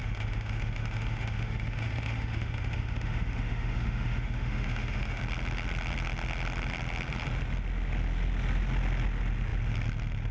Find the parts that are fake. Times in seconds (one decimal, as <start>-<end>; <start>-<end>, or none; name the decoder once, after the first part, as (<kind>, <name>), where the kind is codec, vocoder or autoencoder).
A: 0.0-5.2 (autoencoder, DAC-VAE)

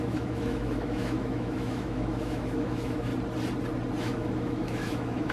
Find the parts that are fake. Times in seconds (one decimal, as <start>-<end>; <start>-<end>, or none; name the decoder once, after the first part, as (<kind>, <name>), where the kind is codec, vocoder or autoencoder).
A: 0.0-3.1 (autoencoder, DAC-VAE); 4.0-5.3

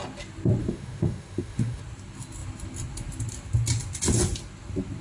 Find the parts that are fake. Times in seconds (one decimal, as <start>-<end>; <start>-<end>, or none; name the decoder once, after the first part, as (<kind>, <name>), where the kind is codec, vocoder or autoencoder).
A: 0.6-1.8 (autoencoder, DAC-VAE)

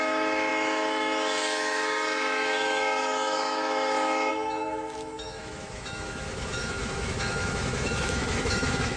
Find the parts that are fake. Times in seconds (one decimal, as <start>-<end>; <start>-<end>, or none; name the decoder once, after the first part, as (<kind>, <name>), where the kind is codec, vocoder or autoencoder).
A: 0.0-9.0 (autoencoder, DAC-VAE)

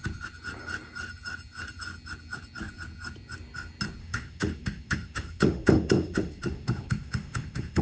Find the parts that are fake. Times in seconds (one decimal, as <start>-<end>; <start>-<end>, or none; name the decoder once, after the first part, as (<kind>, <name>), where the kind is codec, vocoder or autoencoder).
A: 4.0-7.8 (autoencoder, DAC-VAE)

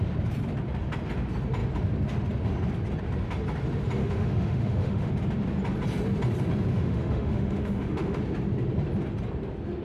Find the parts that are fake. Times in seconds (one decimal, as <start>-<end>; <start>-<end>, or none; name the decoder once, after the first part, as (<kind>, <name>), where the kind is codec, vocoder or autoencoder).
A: 4.0-5.1 (autoencoder, DAC-VAE); 6.7-8.2

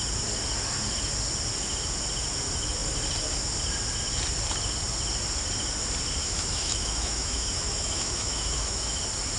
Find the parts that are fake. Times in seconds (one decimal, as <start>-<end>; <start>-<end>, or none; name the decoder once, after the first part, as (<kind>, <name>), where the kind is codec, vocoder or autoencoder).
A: 6.2-9.0 (autoencoder, DAC-VAE)

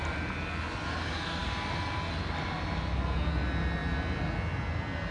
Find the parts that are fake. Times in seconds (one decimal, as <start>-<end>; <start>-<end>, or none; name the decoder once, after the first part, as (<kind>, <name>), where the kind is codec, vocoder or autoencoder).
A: none